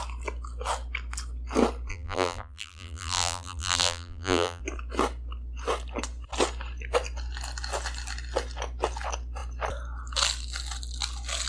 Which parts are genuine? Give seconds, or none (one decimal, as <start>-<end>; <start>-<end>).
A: 0.0-1.9; 4.6-11.5